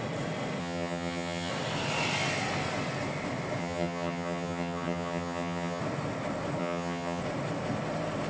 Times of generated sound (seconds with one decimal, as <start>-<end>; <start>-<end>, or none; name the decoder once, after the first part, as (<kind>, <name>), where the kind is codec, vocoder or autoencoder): 0.6-1.5 (vocoder, HiFi-GAN); 3.6-5.8; 6.6-7.2